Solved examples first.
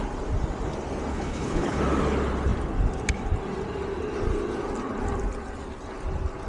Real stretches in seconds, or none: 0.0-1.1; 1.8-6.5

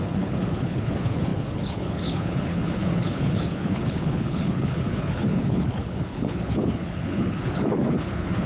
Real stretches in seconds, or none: none